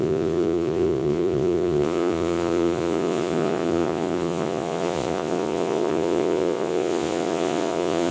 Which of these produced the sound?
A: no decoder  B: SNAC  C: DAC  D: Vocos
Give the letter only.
D